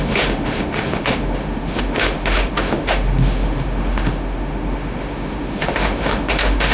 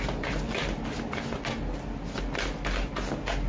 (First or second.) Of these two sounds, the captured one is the second